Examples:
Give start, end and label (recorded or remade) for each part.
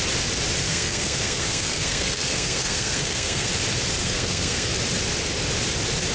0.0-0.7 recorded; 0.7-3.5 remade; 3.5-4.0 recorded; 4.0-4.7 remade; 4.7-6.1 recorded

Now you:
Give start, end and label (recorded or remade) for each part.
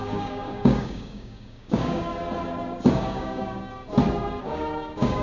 0.0-2.1 remade; 2.1-2.9 recorded; 2.9-3.7 remade; 3.7-4.4 recorded; 4.4-5.2 remade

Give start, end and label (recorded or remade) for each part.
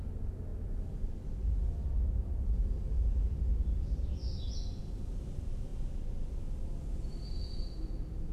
0.0-8.3 recorded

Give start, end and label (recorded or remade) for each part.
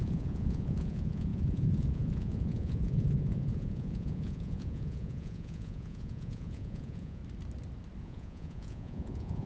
0.0-7.2 remade; 7.2-8.0 recorded; 8.0-9.5 remade